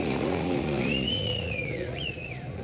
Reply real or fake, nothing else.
fake